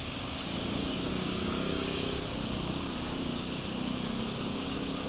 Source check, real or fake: fake